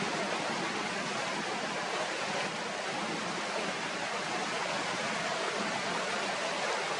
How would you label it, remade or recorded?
recorded